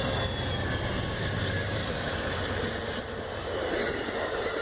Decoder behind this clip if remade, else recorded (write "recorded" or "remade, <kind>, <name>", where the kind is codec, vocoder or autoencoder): recorded